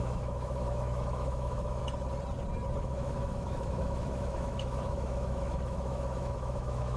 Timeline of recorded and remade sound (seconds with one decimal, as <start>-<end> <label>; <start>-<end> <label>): 0.0-1.8 remade; 1.8-2.8 recorded; 2.8-7.0 remade